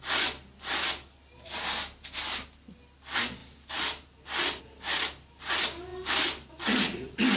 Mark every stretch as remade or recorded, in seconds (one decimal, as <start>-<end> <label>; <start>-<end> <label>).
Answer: 0.0-3.4 recorded; 3.4-4.6 remade; 4.6-7.4 recorded